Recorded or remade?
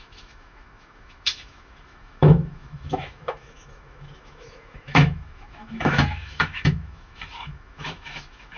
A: remade